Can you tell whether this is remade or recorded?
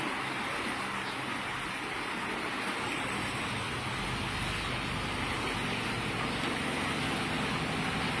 recorded